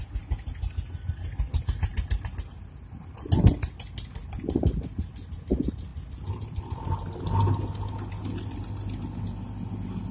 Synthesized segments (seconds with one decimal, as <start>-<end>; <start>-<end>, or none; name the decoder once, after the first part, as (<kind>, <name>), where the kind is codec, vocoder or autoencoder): none